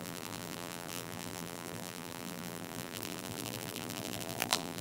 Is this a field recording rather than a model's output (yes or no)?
no